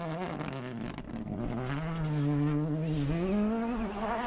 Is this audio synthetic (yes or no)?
no